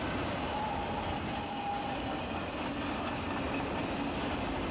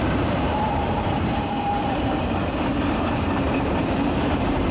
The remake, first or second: second